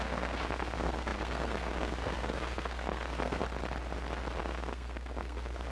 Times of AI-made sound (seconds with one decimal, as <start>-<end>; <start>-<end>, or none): 0.0-3.4; 4.4-5.7